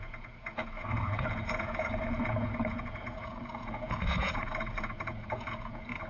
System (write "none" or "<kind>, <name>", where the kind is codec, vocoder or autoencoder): vocoder, Vocos